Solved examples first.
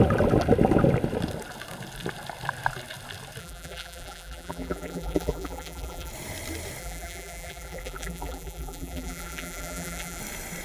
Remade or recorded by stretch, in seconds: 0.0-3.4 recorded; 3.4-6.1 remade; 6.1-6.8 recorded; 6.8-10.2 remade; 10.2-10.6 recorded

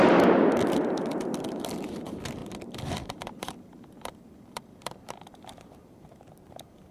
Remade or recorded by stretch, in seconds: 0.0-2.4 recorded; 2.4-6.5 remade; 6.5-6.9 recorded

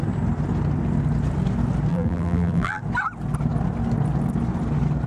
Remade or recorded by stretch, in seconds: 0.0-1.9 recorded; 1.9-2.8 remade; 2.8-5.1 recorded

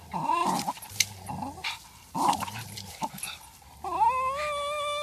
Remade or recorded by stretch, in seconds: 0.0-5.0 recorded

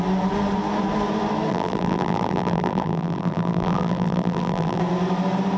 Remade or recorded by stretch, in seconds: 0.0-1.5 recorded; 1.5-4.8 remade; 4.8-5.6 recorded

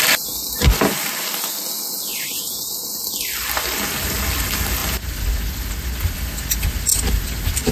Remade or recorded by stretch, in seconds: 0.0-2.1 recorded; 2.1-2.7 remade; 2.7-6.9 recorded; 6.9-7.7 remade

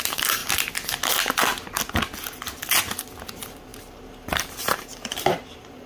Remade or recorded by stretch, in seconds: 0.0-0.4 remade; 0.4-3.2 recorded; 3.2-5.9 remade

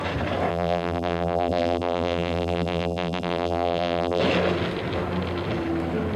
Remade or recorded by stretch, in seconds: 0.0-0.5 recorded; 0.5-4.2 remade; 4.2-6.2 recorded